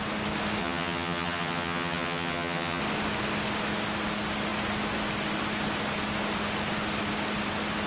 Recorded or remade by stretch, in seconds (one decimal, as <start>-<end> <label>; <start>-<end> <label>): 0.0-0.6 recorded; 0.6-2.8 remade; 2.8-7.9 recorded